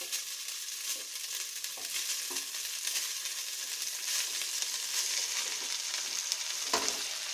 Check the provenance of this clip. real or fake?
real